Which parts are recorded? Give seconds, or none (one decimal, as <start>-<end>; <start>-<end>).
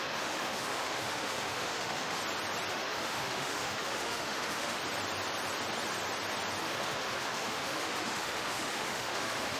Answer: 2.2-2.7; 4.8-6.6